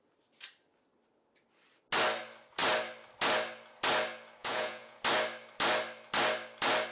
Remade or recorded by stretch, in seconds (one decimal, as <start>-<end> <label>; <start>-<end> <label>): 0.0-4.4 recorded; 4.4-5.0 remade; 5.0-6.9 recorded